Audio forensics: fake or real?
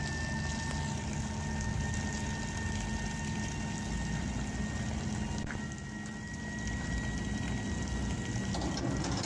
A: real